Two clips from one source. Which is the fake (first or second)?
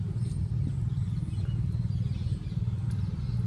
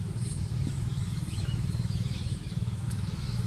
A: second